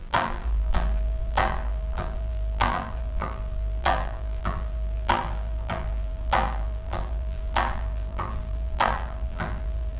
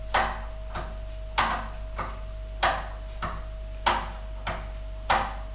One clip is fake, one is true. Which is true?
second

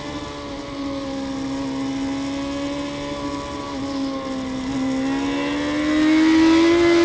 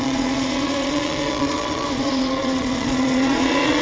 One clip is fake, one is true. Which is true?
first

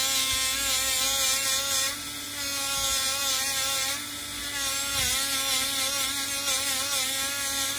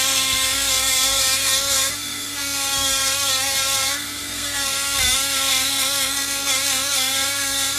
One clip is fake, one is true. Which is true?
first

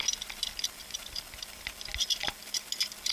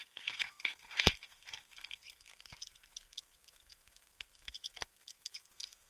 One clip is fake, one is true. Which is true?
first